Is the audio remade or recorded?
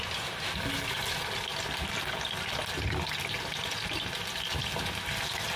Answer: recorded